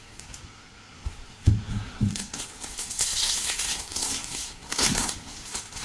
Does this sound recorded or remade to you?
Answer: remade